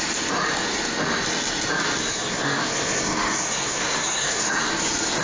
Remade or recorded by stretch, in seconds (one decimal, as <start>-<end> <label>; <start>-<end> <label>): 0.0-2.0 recorded; 2.0-4.7 remade; 4.7-5.2 recorded